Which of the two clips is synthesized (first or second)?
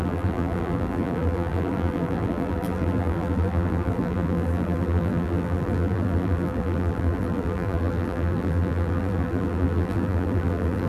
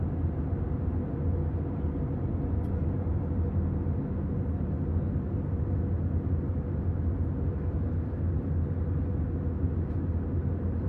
first